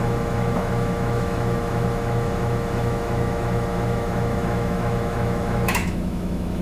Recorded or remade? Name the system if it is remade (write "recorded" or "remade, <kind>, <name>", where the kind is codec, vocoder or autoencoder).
remade, autoencoder, DAC-VAE